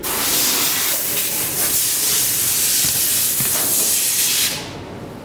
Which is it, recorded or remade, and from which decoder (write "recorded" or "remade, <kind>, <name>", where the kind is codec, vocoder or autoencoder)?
recorded